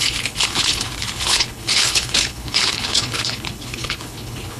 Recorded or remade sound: remade